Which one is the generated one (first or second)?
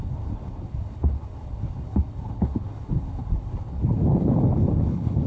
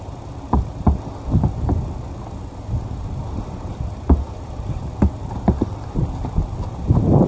first